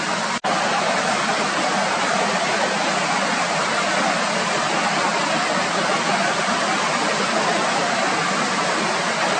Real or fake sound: real